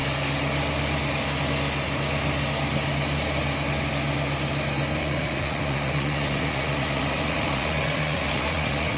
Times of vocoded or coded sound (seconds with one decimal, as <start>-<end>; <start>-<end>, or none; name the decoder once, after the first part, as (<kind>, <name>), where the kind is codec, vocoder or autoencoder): 5.0-9.0 (vocoder, Vocos)